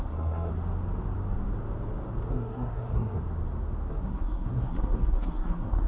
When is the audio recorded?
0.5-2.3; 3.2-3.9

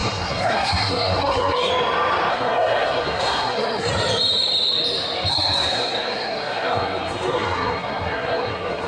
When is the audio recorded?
1.7-2.3; 3.9-5.3

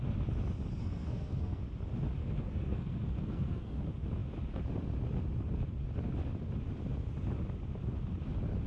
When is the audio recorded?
0.0-0.8; 1.6-2.2; 3.8-8.7

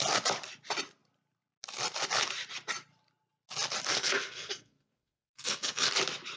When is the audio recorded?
0.0-3.9; 5.9-6.4

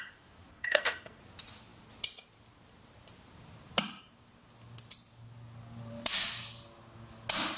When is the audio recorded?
0.0-0.5; 1.2-7.6

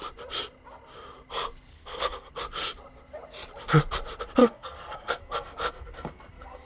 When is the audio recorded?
0.0-1.7; 2.3-4.4